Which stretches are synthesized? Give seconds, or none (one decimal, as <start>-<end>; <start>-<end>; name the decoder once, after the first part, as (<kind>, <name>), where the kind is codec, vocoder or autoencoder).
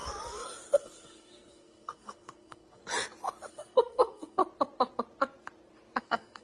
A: 0.8-2.8 (codec, SNAC); 3.5-4.4; 6.0-6.4